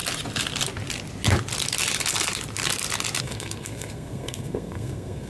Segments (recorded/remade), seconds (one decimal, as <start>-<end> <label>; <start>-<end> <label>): 0.0-3.2 recorded; 3.2-5.3 remade